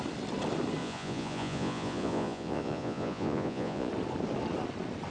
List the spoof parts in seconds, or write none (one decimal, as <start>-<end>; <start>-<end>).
0.8-3.9